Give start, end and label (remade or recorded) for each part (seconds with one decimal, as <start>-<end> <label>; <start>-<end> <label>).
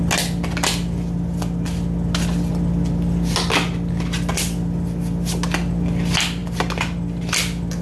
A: 0.0-7.8 recorded